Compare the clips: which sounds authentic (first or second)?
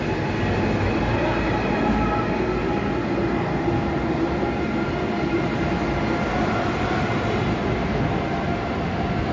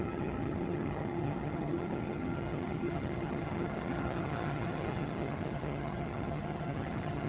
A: first